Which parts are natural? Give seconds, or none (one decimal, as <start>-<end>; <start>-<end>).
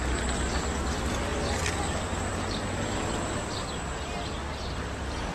0.0-5.3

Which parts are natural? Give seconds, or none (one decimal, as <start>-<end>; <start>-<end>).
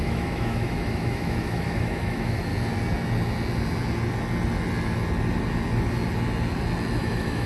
2.5-7.0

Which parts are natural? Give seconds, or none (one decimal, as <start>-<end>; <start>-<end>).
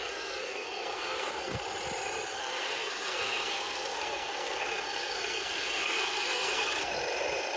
1.6-2.3; 6.9-7.6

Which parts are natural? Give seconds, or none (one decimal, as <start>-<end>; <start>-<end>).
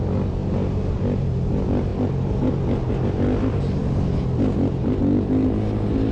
0.0-6.1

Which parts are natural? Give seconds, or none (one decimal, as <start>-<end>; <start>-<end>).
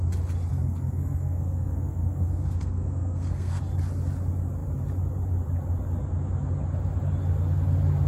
0.0-0.5; 3.6-8.1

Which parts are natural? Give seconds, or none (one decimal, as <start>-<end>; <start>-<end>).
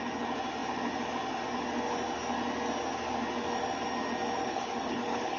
0.0-4.4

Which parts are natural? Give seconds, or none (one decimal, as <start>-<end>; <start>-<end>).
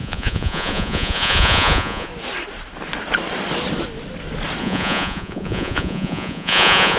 2.1-4.6